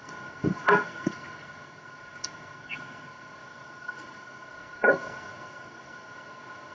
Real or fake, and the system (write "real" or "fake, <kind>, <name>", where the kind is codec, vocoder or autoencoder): fake, codec, SNAC